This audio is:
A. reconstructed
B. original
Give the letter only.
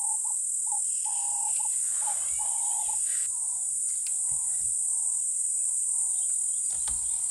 B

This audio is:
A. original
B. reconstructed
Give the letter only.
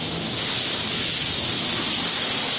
A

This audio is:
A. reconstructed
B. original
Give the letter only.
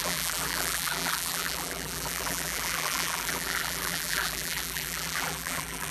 A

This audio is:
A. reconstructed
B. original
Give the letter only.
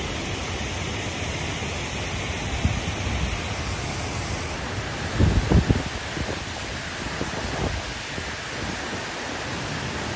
B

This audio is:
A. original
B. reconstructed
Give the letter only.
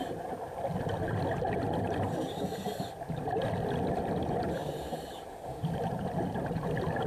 A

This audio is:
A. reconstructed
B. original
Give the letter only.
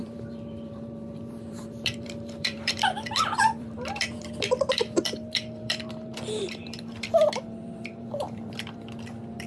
A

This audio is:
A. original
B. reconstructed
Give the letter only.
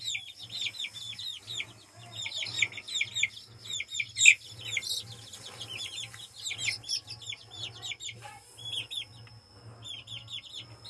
A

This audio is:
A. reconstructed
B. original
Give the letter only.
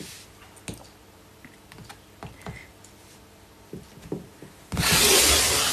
B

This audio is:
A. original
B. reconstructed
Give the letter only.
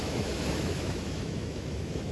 B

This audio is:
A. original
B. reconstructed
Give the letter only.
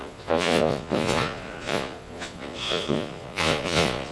B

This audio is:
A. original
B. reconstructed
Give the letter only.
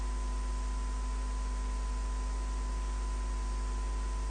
A